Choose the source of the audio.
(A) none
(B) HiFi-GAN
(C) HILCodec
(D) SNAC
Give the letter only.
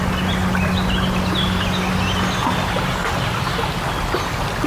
A